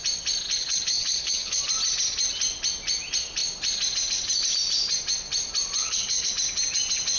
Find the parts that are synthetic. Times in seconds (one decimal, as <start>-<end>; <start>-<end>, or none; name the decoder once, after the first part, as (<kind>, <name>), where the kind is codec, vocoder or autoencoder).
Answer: 0.6-1.6 (codec, HILCodec); 5.8-6.3